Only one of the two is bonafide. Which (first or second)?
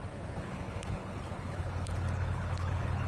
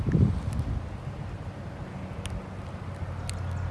second